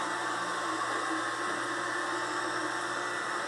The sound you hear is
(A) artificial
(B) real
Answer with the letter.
B